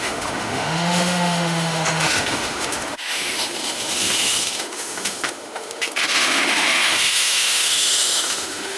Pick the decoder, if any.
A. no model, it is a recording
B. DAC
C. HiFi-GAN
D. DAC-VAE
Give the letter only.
D